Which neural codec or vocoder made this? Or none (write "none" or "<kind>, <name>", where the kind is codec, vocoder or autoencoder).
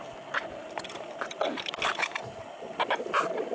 none